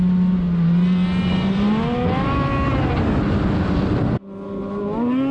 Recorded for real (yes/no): yes